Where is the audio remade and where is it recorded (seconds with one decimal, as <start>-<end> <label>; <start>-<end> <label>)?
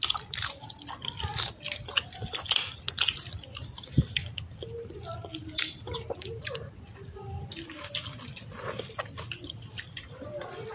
0.0-5.3 recorded; 5.3-6.0 remade; 6.0-10.7 recorded